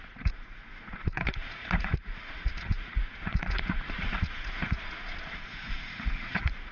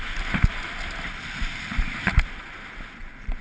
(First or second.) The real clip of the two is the second